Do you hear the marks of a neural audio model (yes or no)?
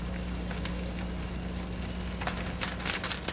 no